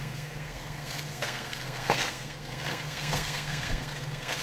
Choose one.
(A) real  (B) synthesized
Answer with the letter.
B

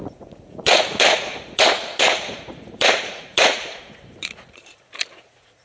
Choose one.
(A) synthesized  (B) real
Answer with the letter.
A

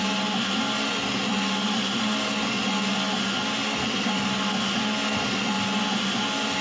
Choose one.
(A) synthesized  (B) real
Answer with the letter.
B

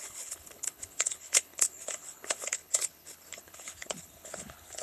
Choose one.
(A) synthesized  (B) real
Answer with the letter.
A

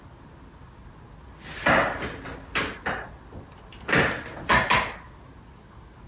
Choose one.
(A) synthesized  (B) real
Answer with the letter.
B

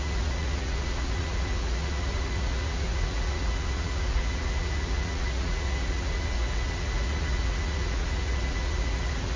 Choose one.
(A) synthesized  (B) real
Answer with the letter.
A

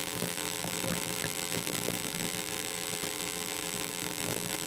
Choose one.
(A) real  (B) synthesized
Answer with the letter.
B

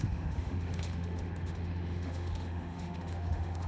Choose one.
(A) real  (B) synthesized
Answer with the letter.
B